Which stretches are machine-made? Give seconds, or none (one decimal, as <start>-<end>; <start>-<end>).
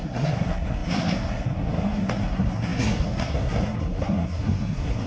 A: 0.0-5.1